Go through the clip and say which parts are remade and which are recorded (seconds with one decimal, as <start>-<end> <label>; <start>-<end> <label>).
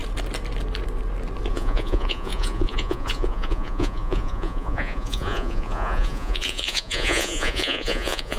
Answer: 0.0-1.5 recorded; 1.5-8.4 remade